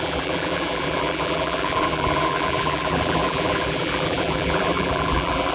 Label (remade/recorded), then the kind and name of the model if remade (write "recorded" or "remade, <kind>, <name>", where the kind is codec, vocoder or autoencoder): remade, vocoder, BigVGAN v2